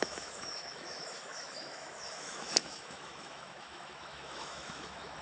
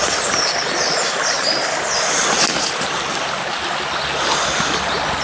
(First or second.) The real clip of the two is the second